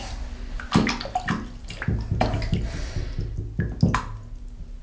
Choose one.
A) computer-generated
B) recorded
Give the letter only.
B